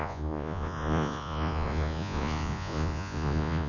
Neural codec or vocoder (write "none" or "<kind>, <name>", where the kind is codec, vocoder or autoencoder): vocoder, Vocos